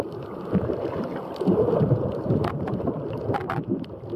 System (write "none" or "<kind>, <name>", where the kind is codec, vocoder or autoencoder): none